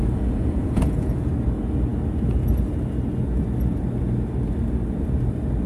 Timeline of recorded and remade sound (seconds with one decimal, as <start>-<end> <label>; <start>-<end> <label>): 0.0-1.3 remade; 1.3-5.7 recorded